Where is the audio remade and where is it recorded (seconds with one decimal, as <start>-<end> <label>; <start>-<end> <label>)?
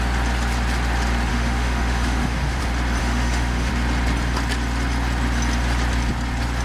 0.0-1.3 recorded; 1.3-2.6 remade; 2.6-3.0 recorded; 3.0-3.7 remade; 3.7-6.6 recorded